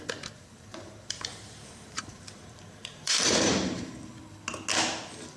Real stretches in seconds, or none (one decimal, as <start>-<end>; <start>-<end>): 0.0-0.7; 3.9-5.4